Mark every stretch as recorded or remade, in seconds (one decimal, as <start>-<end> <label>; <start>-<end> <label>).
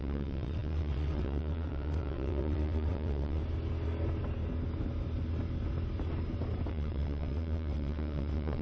0.0-3.4 remade; 3.4-6.7 recorded; 6.7-8.6 remade